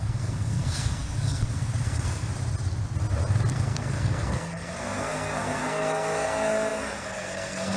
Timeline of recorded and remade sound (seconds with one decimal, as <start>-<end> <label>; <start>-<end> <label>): 0.0-2.3 remade; 2.3-3.5 recorded; 3.5-7.8 remade